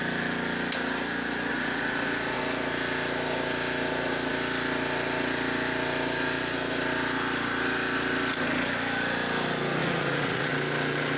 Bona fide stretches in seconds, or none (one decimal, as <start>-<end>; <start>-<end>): 0.0-1.5; 2.4-9.8; 10.5-11.2